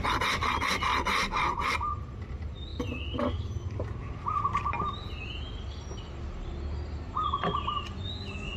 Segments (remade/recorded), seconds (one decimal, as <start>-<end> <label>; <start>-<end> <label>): 0.0-0.9 recorded; 0.9-1.4 remade; 1.4-8.6 recorded